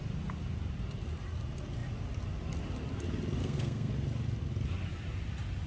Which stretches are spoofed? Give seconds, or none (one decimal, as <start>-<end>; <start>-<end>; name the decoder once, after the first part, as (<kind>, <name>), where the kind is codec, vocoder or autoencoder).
3.4-3.9 (codec, SNAC)